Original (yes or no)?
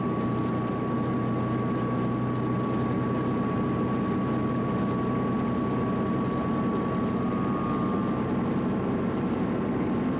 yes